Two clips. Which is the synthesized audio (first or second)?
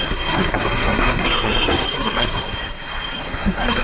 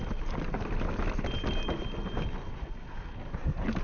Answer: first